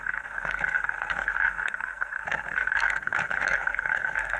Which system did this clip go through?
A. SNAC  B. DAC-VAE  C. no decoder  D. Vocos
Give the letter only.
A